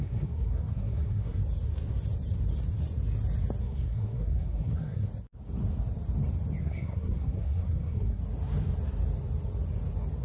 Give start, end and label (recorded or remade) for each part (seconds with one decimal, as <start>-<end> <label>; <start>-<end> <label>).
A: 0.0-1.4 remade; 1.4-3.6 recorded; 3.6-5.1 remade; 5.1-6.6 recorded; 6.6-8.2 remade; 8.2-10.2 recorded